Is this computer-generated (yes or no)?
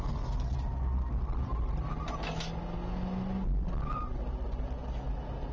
no